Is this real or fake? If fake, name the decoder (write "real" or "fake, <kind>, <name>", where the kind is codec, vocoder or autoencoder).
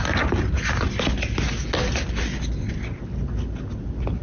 real